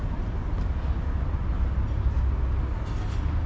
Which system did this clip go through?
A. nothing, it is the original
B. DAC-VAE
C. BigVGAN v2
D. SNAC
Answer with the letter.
A